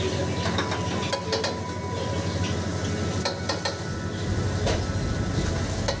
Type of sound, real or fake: real